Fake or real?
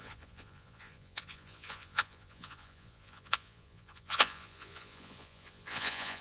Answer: fake